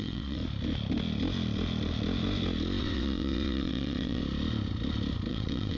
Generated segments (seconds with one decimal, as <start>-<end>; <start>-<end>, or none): 0.0-0.4; 2.8-4.2; 5.3-5.8